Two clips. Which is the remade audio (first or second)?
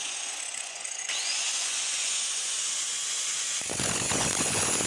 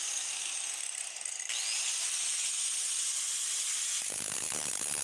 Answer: first